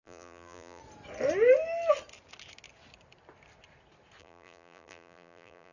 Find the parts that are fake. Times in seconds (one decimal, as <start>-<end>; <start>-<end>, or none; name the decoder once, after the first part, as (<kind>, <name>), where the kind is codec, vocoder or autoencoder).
0.0-0.8 (vocoder, BigVGAN v2); 4.2-5.7